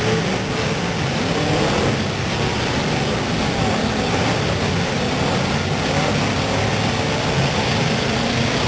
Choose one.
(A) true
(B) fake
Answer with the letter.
A